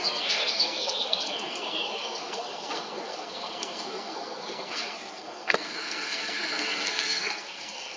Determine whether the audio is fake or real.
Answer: fake